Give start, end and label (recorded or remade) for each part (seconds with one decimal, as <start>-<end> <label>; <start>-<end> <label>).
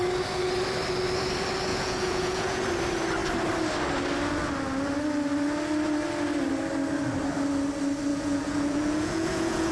0.0-1.7 recorded; 1.7-2.6 remade; 2.6-8.1 recorded; 8.1-9.7 remade